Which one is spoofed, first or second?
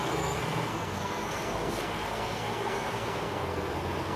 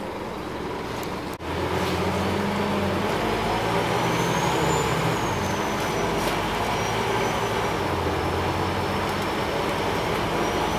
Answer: first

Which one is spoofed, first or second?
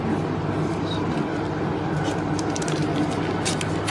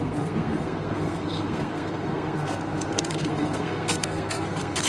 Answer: second